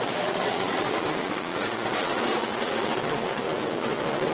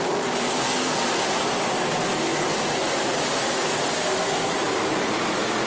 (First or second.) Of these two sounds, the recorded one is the second